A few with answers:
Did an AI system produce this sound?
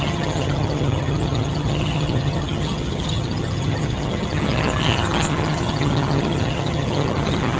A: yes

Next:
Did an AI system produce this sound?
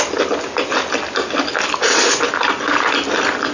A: no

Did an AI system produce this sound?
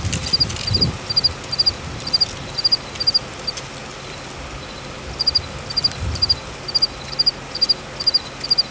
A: no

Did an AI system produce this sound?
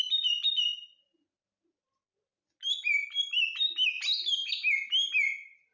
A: no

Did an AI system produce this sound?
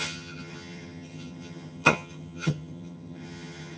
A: yes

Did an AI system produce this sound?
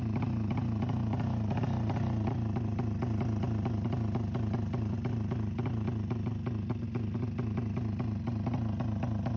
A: no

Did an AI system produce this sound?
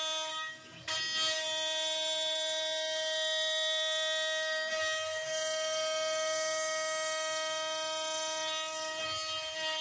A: no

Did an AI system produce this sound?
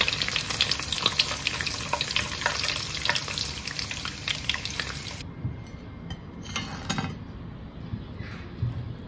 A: no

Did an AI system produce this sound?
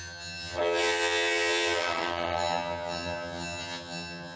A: yes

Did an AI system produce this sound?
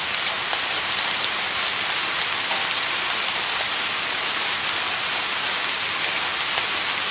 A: no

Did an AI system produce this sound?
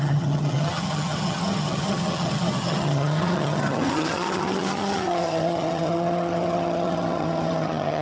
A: yes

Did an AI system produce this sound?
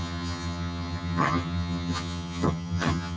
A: yes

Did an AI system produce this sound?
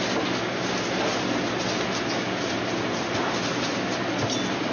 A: no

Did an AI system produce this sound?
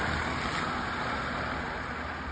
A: no